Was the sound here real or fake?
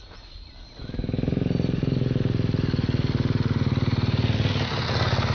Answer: real